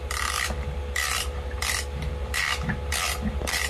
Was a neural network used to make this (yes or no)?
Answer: yes